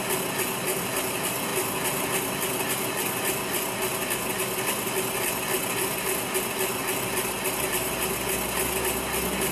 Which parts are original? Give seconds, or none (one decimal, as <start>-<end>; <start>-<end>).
0.0-9.5